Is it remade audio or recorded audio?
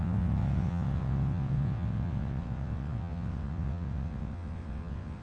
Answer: remade